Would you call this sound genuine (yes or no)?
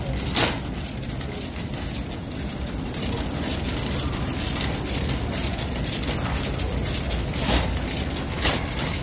yes